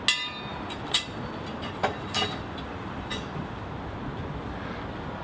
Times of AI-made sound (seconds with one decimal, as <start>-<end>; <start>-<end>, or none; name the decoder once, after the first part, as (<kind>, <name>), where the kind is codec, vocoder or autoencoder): 0.5-3.6 (vocoder, BigVGAN v2)